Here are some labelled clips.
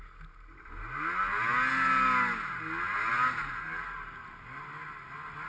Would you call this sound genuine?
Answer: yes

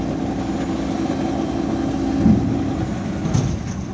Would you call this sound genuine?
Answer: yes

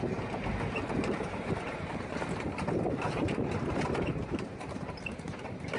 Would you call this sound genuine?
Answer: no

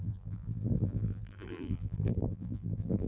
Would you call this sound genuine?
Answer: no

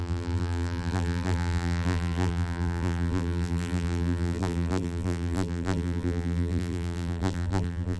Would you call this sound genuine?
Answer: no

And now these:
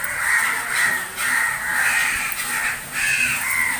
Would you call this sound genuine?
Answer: yes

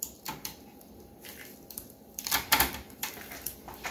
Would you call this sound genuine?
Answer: no